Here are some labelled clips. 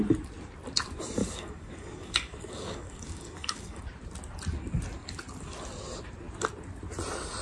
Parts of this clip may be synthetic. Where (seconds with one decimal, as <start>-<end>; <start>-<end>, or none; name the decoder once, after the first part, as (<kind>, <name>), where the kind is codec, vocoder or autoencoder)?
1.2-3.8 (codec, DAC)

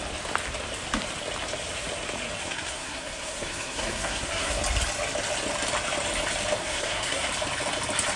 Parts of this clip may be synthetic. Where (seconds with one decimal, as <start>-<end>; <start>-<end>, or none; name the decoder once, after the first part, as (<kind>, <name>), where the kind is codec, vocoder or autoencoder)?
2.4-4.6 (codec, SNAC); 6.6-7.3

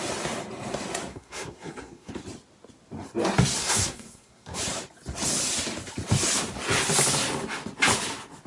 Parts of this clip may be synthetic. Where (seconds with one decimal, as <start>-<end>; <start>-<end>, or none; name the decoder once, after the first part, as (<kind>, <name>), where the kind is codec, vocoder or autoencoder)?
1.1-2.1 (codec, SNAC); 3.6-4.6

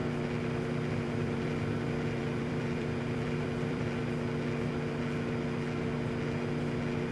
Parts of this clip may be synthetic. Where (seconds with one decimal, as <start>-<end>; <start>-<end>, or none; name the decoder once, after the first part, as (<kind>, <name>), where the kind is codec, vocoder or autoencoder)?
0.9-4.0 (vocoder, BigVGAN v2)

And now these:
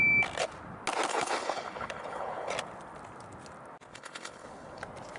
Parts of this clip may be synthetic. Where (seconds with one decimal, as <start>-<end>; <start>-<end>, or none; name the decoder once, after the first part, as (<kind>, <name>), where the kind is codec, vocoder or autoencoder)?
1.1-2.5 (codec, HILCodec); 3.9-4.8

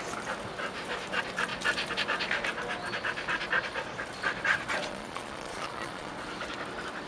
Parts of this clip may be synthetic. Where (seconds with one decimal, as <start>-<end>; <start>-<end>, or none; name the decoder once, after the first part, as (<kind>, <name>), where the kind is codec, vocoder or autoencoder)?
4.9-6.1 (vocoder, Vocos)

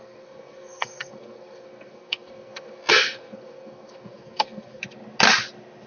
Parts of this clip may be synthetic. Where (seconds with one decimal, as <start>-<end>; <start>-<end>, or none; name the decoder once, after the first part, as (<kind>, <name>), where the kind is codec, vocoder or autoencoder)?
0.0-4.8 (codec, SNAC)

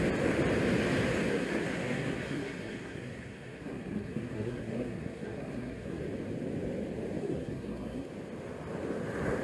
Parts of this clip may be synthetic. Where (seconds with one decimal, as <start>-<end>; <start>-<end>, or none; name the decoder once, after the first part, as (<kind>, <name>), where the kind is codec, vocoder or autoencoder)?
1.3-6.0 (codec, SNAC); 7.2-8.1